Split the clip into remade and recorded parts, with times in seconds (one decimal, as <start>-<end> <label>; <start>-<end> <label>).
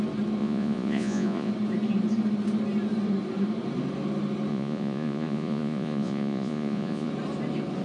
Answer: 0.0-0.4 recorded; 0.4-1.5 remade; 1.5-4.5 recorded; 4.5-7.1 remade; 7.1-7.8 recorded